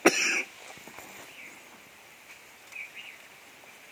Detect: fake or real real